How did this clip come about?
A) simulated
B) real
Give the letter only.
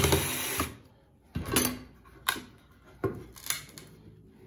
B